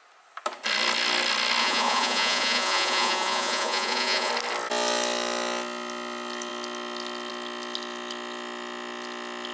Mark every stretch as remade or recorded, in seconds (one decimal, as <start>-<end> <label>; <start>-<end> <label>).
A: 0.0-1.6 recorded; 1.6-4.3 remade; 4.3-9.5 recorded